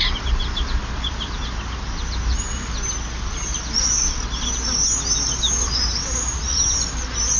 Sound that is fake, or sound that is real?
real